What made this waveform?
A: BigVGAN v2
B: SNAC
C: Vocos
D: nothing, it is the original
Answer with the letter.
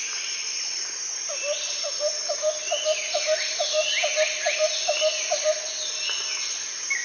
D